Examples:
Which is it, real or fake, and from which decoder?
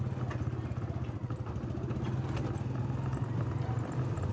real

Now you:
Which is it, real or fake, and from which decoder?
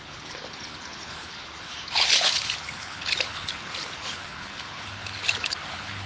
fake, codec, HILCodec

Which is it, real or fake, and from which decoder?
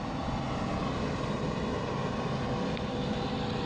real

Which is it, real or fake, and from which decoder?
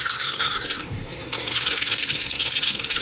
fake, codec, SNAC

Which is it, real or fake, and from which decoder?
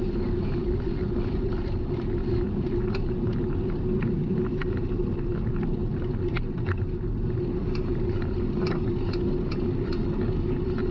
real